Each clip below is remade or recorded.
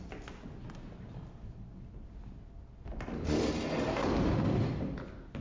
recorded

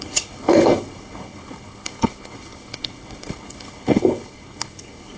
remade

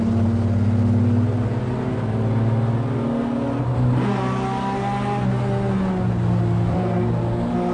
recorded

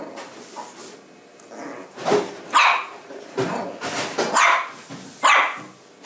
recorded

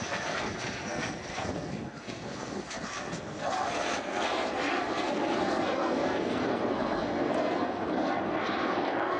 remade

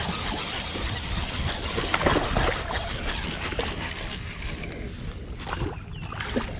recorded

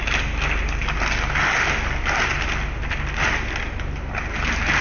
recorded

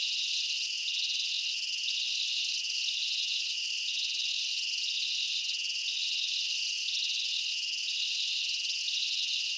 remade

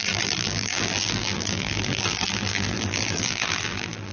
remade